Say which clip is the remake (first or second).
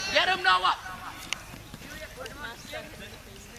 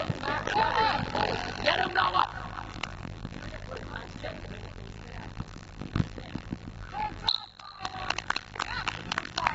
second